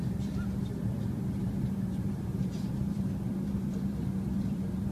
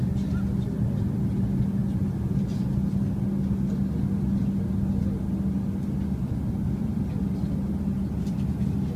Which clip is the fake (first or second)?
first